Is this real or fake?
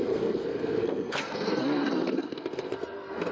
fake